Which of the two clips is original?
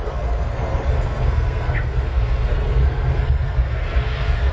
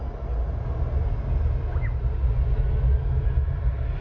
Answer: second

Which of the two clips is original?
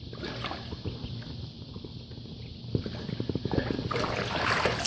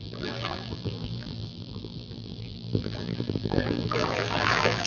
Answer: first